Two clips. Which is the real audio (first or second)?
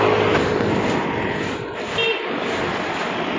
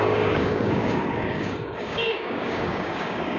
first